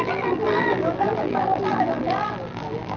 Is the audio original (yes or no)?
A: no